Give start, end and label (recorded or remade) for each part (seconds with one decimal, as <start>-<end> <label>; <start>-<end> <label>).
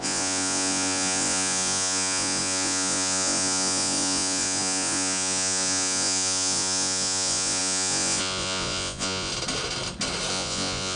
0.0-9.3 remade; 9.3-10.3 recorded; 10.3-11.0 remade